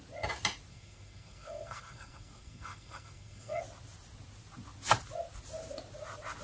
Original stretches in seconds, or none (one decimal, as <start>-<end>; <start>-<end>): 0.0-0.7; 3.6-6.4